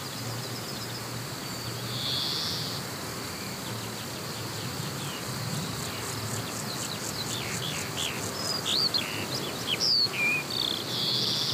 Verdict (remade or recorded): recorded